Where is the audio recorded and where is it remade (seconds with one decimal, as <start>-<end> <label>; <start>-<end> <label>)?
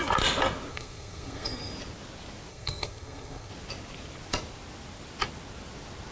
0.0-0.7 recorded; 0.7-1.7 remade; 1.7-2.5 recorded; 2.5-3.5 remade; 3.5-6.1 recorded